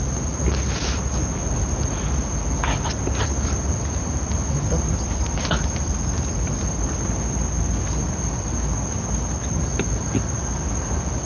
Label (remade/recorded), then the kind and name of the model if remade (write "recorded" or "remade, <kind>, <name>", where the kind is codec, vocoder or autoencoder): recorded